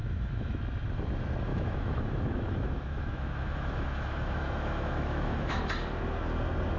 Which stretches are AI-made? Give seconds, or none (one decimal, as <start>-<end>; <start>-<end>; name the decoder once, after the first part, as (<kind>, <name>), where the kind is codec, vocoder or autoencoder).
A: 0.0-0.6 (autoencoder, DAC-VAE); 1.5-5.6